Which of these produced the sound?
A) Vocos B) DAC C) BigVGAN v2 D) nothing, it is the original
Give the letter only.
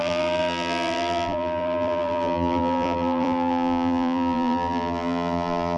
C